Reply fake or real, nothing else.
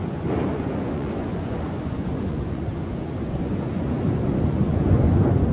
fake